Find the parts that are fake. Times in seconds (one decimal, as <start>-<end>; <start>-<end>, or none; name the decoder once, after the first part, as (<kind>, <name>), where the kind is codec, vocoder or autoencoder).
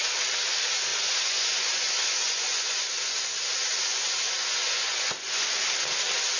0.9-3.4 (vocoder, Vocos); 3.9-5.6